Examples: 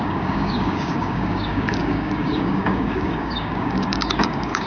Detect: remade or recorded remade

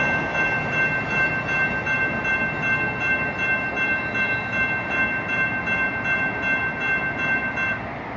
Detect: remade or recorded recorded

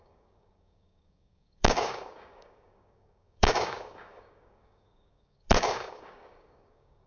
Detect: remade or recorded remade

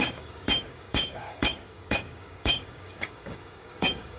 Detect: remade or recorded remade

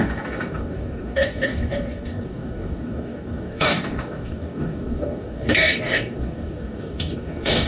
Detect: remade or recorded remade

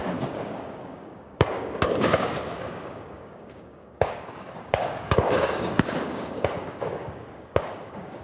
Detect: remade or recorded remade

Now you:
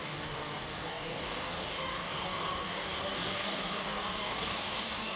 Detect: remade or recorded remade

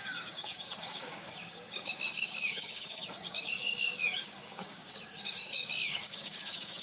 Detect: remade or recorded remade